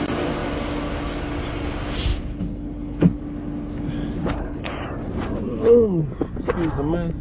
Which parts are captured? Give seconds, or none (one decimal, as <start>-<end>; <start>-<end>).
0.0-2.1; 3.2-4.2; 4.7-5.5; 6.0-7.2